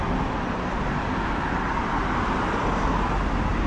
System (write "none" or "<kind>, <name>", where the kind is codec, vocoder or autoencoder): none